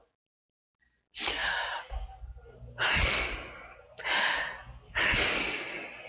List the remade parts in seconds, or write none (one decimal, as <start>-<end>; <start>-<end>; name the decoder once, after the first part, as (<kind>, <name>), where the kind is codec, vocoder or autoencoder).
1.4-4.5 (vocoder, BigVGAN v2)